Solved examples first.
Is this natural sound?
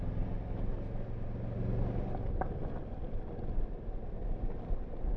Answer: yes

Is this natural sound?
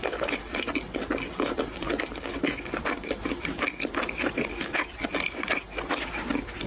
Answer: yes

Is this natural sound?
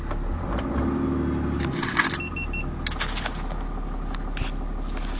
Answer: yes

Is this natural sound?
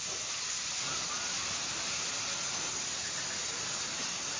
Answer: no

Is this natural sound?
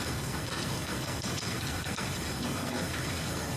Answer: no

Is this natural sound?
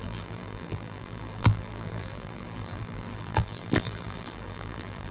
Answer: no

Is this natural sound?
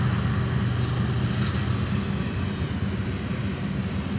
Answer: yes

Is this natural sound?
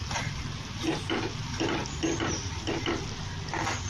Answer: yes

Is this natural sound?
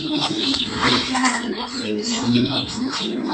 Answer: no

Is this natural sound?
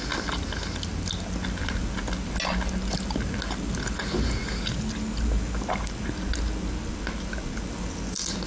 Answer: yes